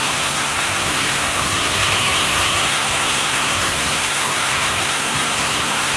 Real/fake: fake